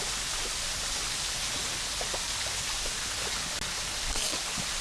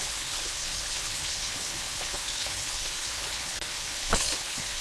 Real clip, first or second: first